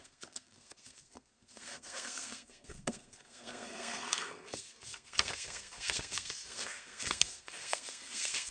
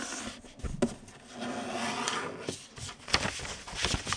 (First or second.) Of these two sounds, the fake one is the first